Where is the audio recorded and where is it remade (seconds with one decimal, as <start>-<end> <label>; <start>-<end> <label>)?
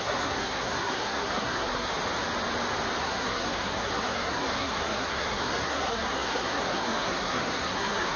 0.0-1.9 remade; 1.9-3.0 recorded; 3.0-8.2 remade